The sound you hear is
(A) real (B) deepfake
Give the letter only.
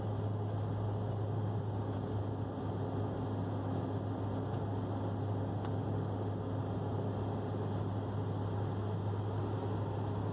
A